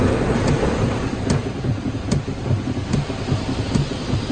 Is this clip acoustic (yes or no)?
yes